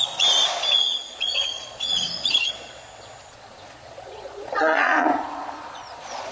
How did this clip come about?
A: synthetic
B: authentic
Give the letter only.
A